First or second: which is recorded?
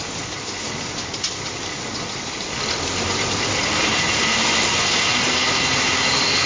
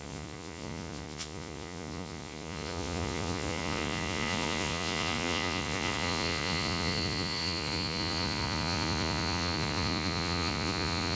first